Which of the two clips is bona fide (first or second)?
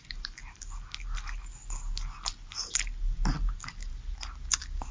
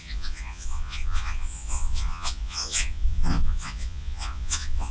first